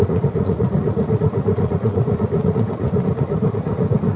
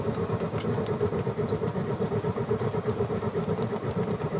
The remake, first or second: first